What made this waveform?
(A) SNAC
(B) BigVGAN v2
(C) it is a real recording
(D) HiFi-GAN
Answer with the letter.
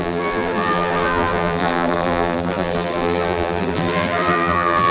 B